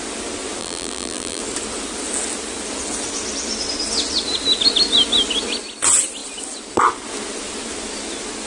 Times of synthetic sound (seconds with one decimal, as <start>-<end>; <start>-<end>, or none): 0.6-1.4